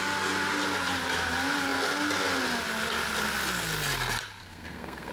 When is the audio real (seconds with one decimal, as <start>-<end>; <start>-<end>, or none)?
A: 0.0-4.4